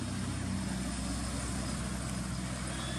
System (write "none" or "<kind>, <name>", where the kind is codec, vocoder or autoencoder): none